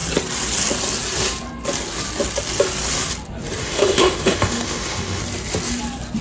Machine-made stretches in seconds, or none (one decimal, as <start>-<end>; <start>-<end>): 3.6-5.2